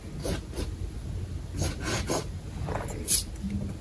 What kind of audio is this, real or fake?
real